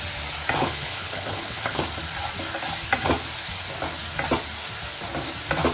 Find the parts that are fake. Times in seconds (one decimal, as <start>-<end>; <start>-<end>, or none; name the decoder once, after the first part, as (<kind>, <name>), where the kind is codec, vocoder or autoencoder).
0.6-1.8 (codec, HILCodec)